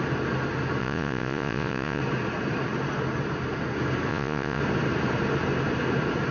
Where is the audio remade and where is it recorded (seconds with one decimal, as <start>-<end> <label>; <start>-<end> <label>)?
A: 0.0-0.8 recorded; 0.8-2.0 remade; 2.0-4.1 recorded; 4.1-4.6 remade; 4.6-6.3 recorded